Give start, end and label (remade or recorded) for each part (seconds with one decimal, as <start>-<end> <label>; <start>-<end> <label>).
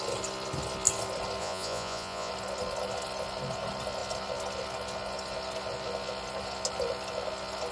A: 0.0-1.4 recorded; 1.4-2.3 remade; 2.3-7.7 recorded